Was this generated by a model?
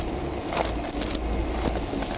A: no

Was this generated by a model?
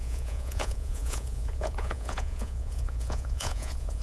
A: yes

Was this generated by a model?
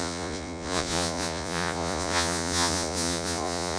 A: yes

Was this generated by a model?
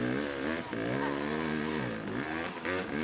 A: no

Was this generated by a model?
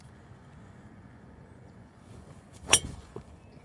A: yes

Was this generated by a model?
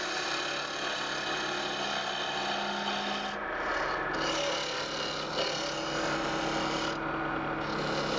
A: no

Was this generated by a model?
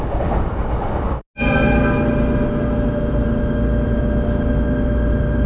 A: no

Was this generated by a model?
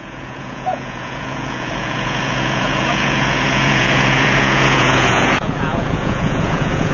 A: yes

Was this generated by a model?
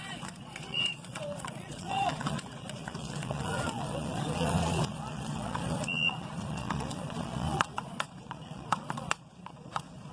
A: yes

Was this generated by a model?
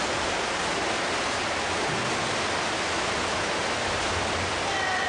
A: no